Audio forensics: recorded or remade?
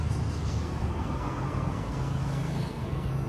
remade